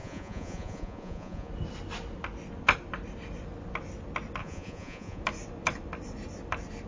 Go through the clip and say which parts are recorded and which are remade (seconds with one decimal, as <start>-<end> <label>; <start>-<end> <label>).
0.0-1.5 remade; 1.5-4.4 recorded; 4.4-5.2 remade; 5.2-6.9 recorded

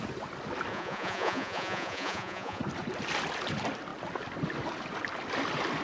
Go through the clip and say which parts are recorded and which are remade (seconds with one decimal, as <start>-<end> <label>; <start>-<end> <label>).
0.0-0.7 recorded; 0.7-2.6 remade; 2.6-5.8 recorded

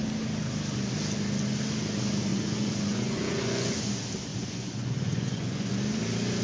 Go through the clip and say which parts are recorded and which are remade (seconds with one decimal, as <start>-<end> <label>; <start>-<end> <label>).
0.0-2.3 recorded; 2.3-3.9 remade; 3.9-4.3 recorded; 4.3-5.7 remade; 5.7-6.4 recorded

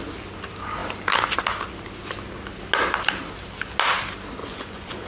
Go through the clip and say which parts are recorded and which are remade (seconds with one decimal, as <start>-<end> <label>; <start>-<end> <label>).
0.0-4.4 recorded; 4.4-5.1 remade